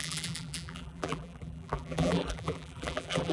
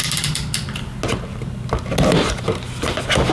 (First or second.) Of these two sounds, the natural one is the second